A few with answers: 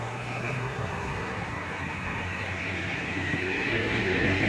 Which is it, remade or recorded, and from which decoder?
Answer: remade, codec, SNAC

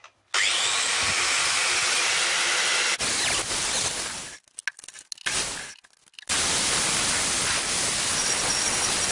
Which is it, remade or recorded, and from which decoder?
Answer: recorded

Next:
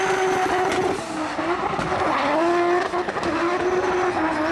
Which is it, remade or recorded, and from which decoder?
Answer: recorded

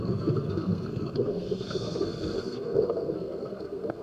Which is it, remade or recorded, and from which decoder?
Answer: remade, codec, SNAC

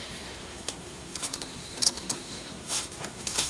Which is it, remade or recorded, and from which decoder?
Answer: remade, codec, SNAC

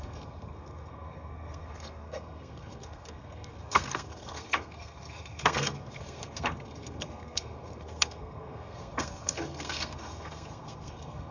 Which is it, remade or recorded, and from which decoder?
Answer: remade, codec, SNAC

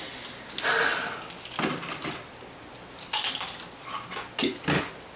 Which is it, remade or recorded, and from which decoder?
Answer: recorded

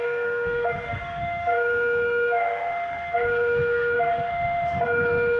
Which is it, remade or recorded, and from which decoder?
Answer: remade, codec, SNAC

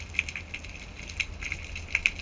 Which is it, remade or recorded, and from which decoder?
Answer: recorded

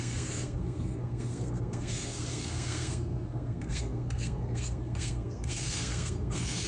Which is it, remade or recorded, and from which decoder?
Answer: remade, codec, SNAC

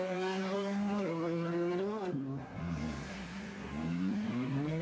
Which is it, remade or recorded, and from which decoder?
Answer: remade, codec, SNAC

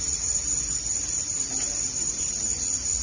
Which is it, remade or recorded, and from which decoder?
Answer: recorded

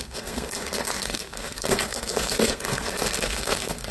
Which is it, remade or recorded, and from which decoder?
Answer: remade, codec, SNAC